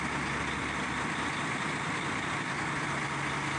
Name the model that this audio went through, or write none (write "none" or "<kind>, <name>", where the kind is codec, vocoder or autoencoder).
none